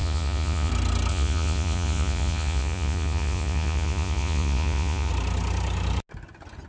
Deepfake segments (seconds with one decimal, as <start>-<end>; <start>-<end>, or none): 0.0-0.7; 1.1-5.1